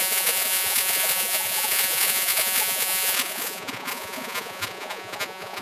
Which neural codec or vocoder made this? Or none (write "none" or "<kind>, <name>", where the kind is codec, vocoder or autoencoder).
vocoder, Vocos